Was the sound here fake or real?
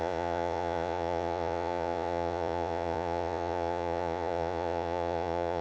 fake